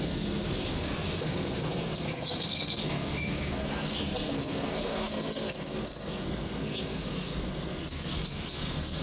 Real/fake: fake